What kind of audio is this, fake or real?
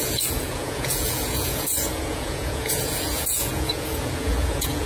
fake